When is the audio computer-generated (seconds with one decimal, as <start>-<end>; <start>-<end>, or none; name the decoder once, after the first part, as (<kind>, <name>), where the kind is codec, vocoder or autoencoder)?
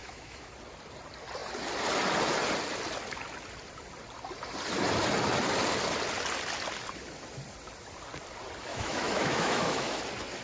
0.0-0.5 (autoencoder, DAC-VAE); 8.7-10.0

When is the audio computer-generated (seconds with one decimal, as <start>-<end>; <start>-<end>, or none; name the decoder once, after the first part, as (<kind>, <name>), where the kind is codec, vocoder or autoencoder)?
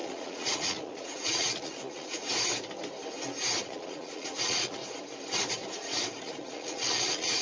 0.0-2.2 (vocoder, Vocos); 3.6-4.8; 6.2-7.4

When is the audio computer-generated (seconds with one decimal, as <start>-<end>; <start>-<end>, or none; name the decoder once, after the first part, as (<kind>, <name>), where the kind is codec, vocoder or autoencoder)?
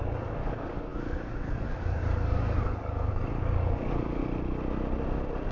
0.0-4.2 (codec, DAC)